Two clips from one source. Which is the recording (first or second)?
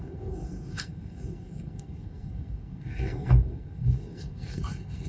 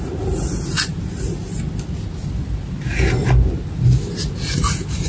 second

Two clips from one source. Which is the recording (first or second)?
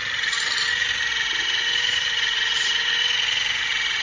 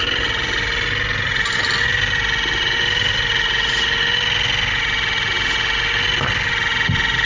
second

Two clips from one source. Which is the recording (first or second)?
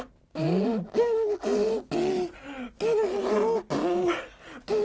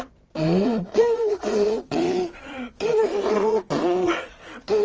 first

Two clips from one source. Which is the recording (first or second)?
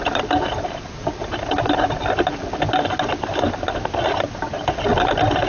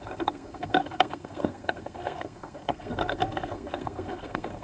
first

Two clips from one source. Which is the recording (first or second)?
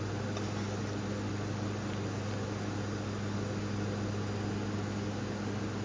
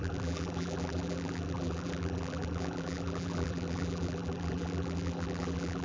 first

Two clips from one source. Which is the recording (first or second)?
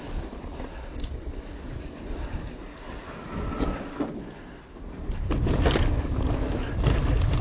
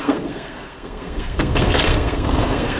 first